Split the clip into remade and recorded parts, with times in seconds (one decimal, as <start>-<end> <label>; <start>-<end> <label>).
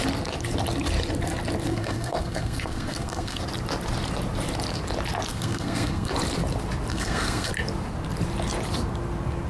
0.0-1.7 recorded; 1.7-3.4 remade; 3.4-5.3 recorded; 5.3-6.1 remade; 6.1-6.9 recorded; 6.9-7.5 remade; 7.5-9.5 recorded